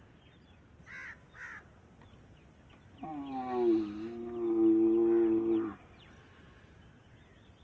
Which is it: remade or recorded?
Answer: recorded